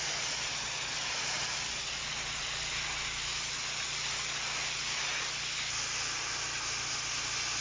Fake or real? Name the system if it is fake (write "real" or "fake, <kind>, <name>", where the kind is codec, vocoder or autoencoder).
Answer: real